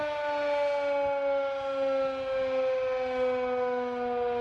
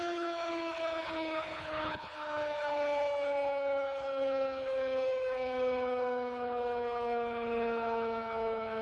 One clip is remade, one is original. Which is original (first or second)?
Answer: first